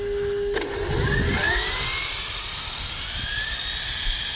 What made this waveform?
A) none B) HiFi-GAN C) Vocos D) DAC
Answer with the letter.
A